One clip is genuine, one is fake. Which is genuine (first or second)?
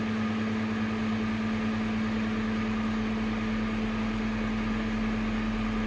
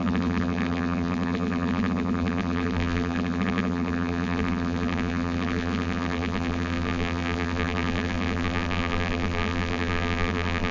first